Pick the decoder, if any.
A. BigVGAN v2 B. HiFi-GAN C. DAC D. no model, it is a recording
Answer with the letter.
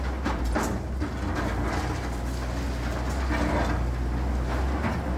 D